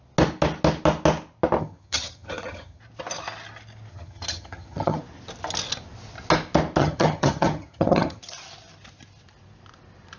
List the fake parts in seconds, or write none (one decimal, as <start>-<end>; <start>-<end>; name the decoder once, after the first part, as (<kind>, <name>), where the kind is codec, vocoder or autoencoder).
1.6-2.8 (vocoder, HiFi-GAN); 3.9-5.0; 6.8-8.2